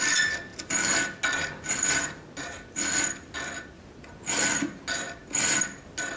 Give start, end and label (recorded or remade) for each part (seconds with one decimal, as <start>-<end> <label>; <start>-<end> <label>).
0.0-6.2 recorded